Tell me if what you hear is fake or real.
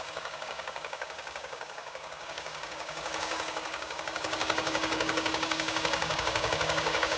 fake